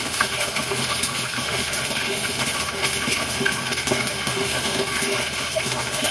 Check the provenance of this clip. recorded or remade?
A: remade